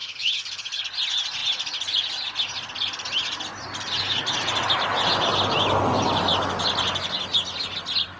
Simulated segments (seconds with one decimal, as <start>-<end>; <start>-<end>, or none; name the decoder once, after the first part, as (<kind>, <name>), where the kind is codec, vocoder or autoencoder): 0.0-0.8 (codec, HILCodec)